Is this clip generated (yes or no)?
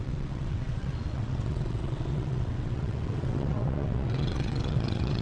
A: yes